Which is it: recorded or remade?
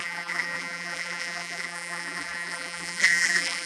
remade